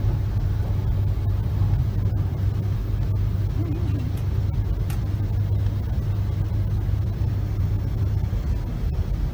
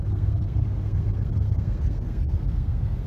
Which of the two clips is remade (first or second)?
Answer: second